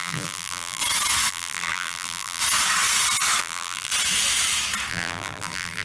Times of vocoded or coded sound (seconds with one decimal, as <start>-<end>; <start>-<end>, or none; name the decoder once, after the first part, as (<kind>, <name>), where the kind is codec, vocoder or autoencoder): 0.0-0.8 (vocoder, BigVGAN v2); 1.3-2.4; 3.4-3.9; 4.9-5.8